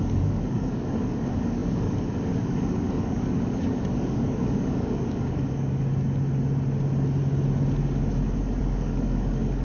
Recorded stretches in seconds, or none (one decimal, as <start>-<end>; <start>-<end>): 5.9-8.6